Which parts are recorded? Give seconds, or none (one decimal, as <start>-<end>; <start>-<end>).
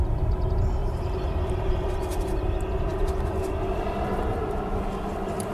0.0-0.8; 2.0-5.5